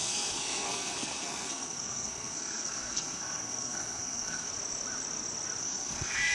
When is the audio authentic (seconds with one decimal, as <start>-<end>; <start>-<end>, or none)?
4.5-5.6